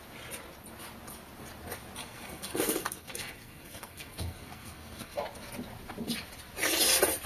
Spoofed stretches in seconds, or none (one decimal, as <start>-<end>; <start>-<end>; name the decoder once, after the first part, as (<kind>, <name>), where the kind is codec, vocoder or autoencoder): 2.0-5.2 (codec, SNAC)

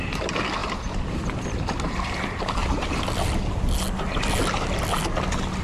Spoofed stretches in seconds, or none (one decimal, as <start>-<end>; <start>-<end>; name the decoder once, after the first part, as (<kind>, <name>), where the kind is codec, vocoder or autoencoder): 0.6-2.0 (vocoder, BigVGAN v2); 2.6-3.4

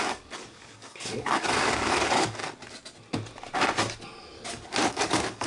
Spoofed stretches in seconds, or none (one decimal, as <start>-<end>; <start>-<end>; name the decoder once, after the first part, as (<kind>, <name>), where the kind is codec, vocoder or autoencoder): 0.0-2.4 (codec, DAC); 4.9-5.5